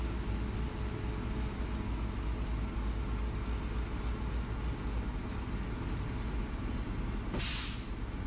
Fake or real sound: real